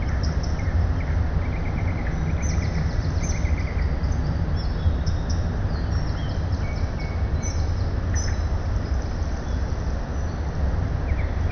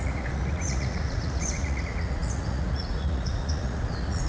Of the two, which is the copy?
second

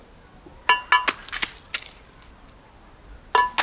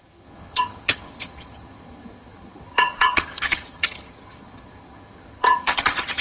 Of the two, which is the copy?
second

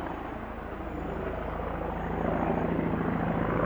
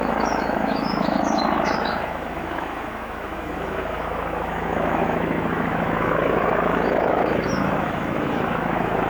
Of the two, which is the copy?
second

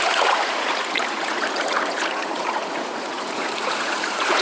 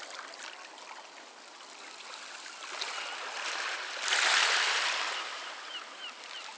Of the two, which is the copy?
first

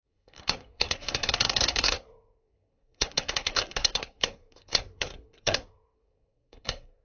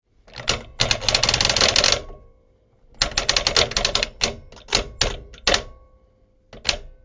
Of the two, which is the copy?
first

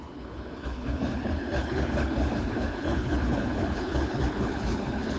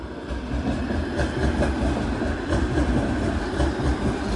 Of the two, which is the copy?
first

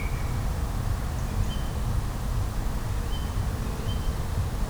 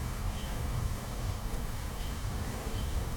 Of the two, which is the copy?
second